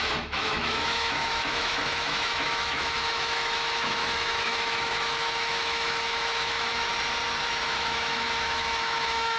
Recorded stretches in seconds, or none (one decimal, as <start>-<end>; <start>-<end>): 6.9-7.5